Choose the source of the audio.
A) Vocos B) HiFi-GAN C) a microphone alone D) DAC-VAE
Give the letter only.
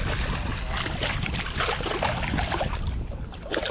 C